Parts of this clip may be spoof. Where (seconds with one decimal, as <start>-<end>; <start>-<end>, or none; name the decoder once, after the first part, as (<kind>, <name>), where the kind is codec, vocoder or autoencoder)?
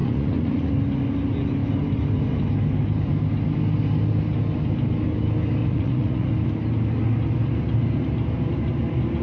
0.0-0.7 (vocoder, Vocos); 5.6-6.3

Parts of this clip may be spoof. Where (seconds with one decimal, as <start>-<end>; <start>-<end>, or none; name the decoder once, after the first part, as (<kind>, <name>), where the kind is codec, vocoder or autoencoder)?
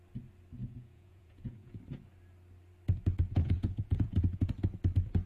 0.6-1.8 (vocoder, Vocos); 3.4-4.5